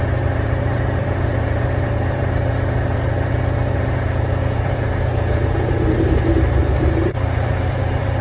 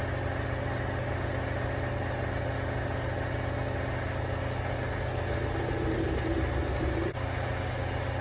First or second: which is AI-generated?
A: first